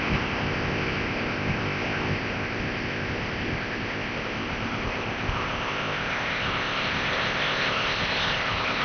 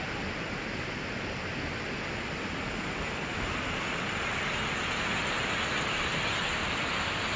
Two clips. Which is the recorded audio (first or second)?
second